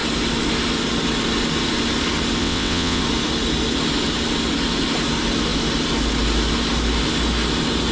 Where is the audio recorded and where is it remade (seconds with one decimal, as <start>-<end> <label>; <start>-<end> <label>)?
0.0-2.4 recorded; 2.4-3.0 remade; 3.0-7.9 recorded